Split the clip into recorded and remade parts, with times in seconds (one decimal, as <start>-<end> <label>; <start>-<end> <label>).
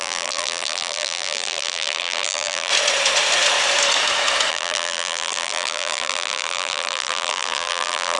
0.0-2.7 remade; 2.7-4.5 recorded; 4.5-8.2 remade